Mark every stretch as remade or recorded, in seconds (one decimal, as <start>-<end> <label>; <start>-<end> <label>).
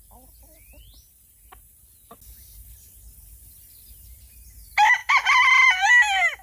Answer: 0.0-5.0 recorded; 5.0-5.9 remade; 5.9-6.4 recorded